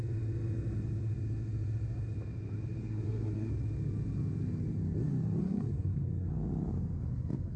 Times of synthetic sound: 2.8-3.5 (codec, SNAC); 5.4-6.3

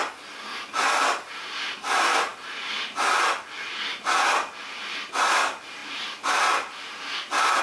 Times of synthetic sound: none

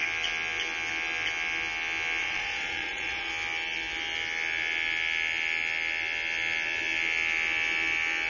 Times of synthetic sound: 2.2-3.3 (vocoder, Vocos)

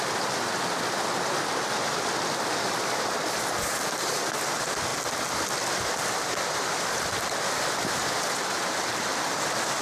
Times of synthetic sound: none